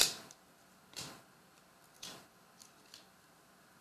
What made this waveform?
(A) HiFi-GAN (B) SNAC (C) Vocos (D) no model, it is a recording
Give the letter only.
D